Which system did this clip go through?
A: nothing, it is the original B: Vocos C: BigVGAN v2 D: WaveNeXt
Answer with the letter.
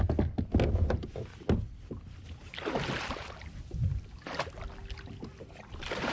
A